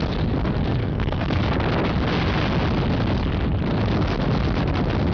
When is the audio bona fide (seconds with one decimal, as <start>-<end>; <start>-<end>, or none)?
0.0-0.8; 1.4-5.1

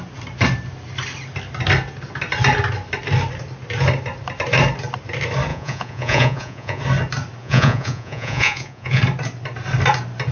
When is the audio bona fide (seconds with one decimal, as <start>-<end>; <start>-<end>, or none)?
0.0-5.5; 6.8-7.4; 9.0-10.3

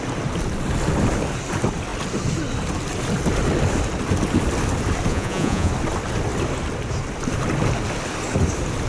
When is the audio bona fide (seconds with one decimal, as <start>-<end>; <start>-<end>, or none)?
0.0-5.1; 5.7-8.9

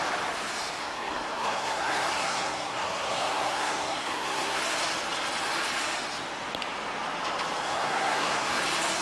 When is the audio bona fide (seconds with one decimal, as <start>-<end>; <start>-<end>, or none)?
0.0-0.8; 4.6-7.6; 8.6-9.0

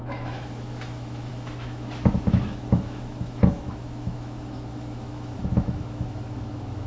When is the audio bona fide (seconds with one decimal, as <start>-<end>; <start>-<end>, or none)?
none

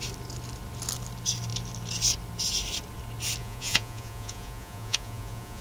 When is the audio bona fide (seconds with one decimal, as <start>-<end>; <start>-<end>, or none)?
0.0-3.4